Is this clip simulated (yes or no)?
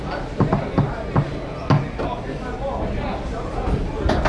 no